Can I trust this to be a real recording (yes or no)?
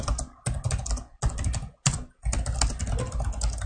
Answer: yes